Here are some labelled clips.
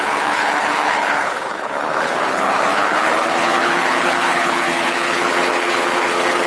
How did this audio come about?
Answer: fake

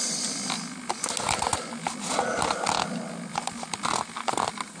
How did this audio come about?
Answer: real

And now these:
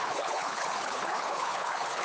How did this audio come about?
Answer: fake